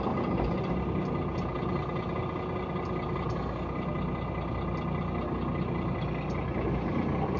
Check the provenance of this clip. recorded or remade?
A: recorded